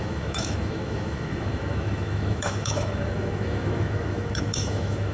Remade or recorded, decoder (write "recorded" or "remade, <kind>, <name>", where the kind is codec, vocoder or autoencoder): remade, autoencoder, DAC-VAE